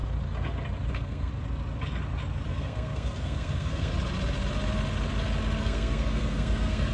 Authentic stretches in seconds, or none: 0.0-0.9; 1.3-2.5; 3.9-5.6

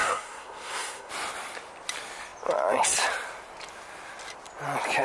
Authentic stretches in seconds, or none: 1.1-5.0

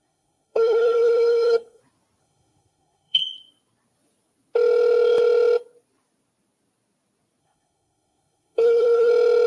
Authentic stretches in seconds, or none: 1.8-2.2; 3.2-7.4; 9.1-9.5

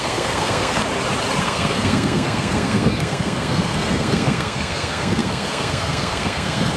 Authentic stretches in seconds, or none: 0.8-1.4

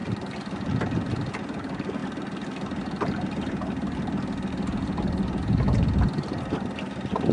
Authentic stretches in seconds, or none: 0.0-7.3